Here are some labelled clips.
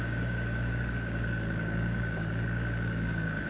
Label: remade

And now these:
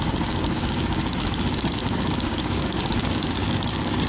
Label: remade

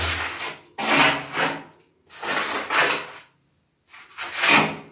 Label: recorded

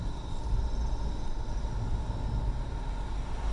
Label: recorded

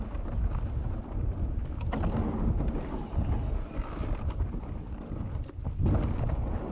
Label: recorded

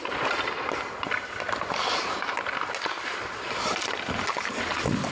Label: recorded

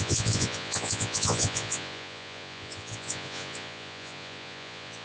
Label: remade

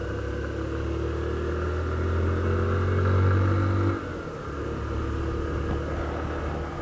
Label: recorded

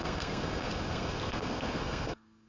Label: remade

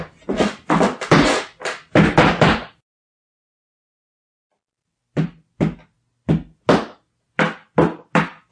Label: recorded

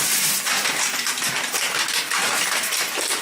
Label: remade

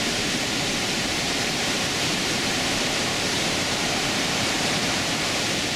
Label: remade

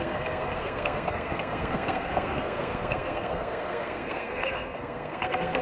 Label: remade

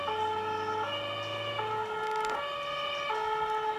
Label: recorded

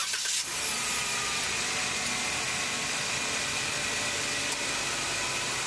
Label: recorded